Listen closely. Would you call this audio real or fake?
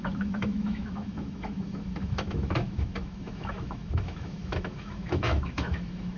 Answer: fake